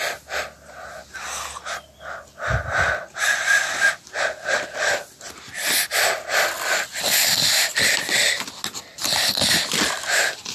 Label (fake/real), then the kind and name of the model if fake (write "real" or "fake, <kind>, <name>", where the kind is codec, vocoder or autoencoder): real